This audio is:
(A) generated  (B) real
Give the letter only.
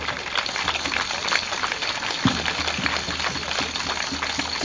B